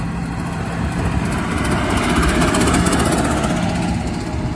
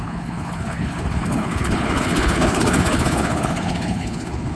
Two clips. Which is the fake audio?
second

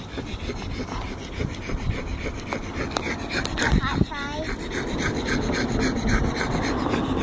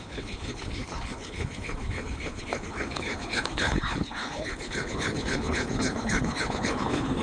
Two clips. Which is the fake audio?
second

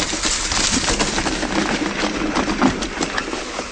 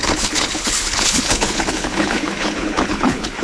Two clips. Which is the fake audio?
second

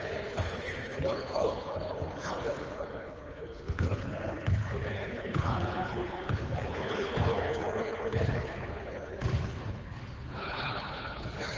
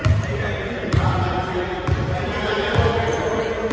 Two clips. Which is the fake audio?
first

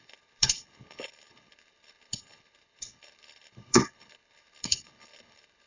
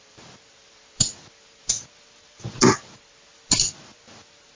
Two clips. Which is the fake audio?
first